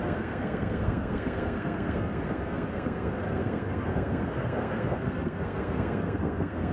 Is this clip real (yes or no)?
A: no